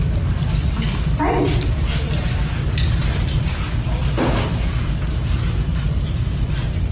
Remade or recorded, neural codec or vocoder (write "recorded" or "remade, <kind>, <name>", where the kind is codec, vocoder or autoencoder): recorded